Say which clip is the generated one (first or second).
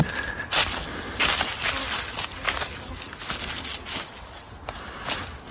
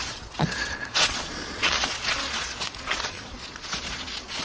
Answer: second